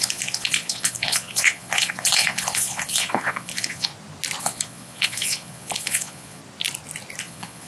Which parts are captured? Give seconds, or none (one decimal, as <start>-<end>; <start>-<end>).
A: 3.9-4.4; 6.4-7.2

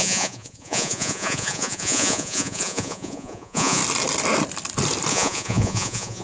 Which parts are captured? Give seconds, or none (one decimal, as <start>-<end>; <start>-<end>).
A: 3.8-5.1

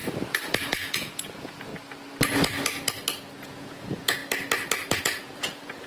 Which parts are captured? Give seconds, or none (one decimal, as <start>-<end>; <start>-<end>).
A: 0.0-0.6; 1.7-3.4; 4.2-5.0

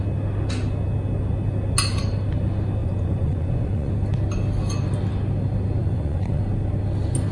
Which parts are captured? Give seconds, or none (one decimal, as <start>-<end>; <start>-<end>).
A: 0.0-2.8; 3.9-5.8; 6.4-7.3

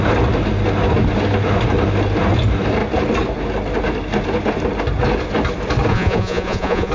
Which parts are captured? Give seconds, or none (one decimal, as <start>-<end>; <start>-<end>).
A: 0.0-5.9

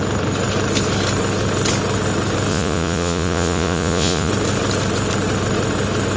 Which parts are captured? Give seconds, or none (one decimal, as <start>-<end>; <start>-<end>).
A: 0.0-2.5; 4.3-6.2

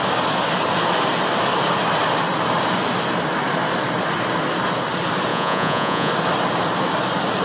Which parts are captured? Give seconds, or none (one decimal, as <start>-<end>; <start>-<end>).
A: 0.0-5.3; 6.1-7.4